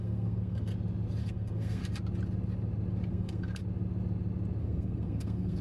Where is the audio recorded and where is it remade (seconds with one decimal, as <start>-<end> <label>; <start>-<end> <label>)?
0.0-0.7 remade; 0.7-1.2 recorded; 1.2-1.8 remade; 1.8-3.1 recorded; 3.1-3.6 remade; 3.6-4.6 recorded; 4.6-5.6 remade